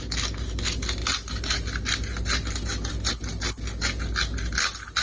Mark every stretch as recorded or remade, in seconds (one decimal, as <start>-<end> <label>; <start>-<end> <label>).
0.0-5.0 recorded